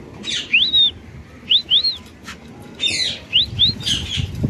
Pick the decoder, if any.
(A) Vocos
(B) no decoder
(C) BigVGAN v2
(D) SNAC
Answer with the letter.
B